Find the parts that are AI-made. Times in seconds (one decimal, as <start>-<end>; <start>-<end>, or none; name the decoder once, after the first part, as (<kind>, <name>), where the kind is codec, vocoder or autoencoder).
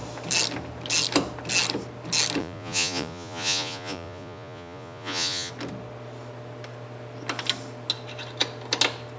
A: 2.4-5.5 (vocoder, Vocos)